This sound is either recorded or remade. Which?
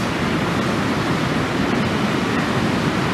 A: recorded